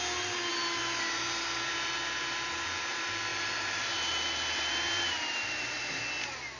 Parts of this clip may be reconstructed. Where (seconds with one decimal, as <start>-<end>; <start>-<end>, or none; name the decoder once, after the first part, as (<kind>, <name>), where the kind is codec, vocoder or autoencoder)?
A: 3.3-6.0 (vocoder, BigVGAN v2)